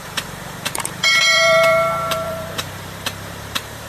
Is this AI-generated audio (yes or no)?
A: yes